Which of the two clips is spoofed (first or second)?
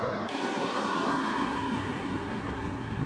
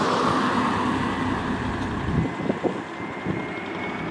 first